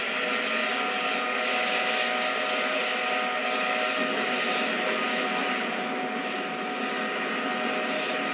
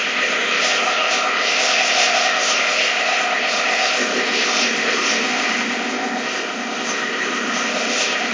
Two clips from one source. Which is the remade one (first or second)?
second